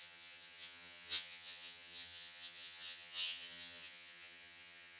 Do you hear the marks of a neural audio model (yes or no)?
yes